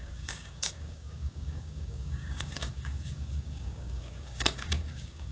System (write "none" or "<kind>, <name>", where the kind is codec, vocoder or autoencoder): codec, DAC